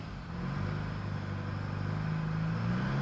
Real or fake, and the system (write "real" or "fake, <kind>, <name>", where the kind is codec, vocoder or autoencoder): real